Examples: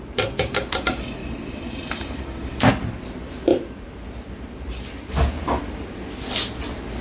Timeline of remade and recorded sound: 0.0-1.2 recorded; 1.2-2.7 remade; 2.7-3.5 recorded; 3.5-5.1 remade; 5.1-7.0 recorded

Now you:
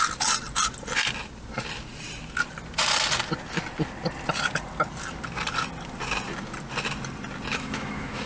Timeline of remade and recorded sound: 0.0-7.5 recorded; 7.5-8.3 remade